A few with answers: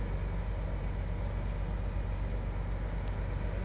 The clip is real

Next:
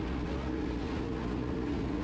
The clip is fake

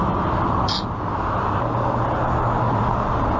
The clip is real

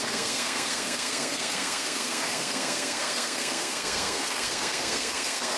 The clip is fake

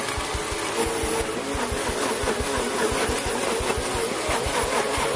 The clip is real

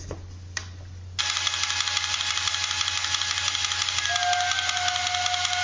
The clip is real